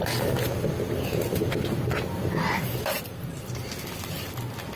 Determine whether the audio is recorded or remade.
recorded